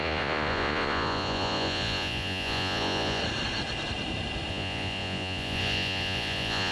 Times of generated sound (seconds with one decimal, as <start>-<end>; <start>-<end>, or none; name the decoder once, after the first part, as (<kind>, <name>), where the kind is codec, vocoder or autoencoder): 0.0-3.2 (vocoder, Vocos); 4.5-6.7